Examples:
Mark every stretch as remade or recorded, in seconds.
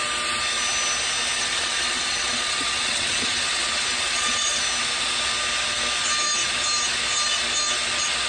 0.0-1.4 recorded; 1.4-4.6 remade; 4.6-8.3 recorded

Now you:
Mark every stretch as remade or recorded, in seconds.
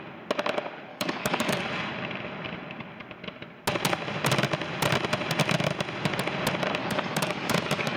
0.0-0.9 recorded; 0.9-1.6 remade; 1.6-6.8 recorded; 6.8-8.0 remade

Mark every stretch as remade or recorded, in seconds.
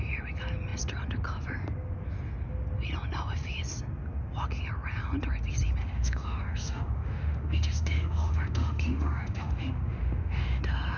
0.0-5.8 recorded; 5.8-10.6 remade; 10.6-11.0 recorded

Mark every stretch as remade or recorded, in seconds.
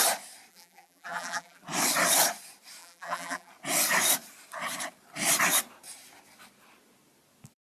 0.0-0.5 recorded; 0.5-1.6 remade; 1.6-2.8 recorded; 2.8-3.5 remade; 3.5-7.6 recorded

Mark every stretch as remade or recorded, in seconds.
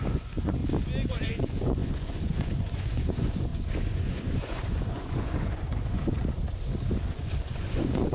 0.0-0.6 remade; 0.6-1.1 recorded; 1.1-6.2 remade; 6.2-7.1 recorded; 7.1-8.1 remade